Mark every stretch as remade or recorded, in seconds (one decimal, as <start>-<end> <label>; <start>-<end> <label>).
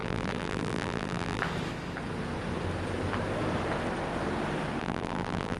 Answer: 0.0-1.4 remade; 1.4-4.8 recorded; 4.8-5.6 remade